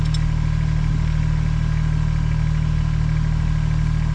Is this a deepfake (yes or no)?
no